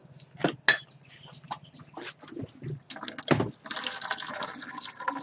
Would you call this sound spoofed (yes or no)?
no